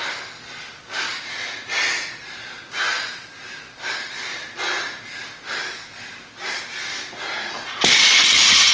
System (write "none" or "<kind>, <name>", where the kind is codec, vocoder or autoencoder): none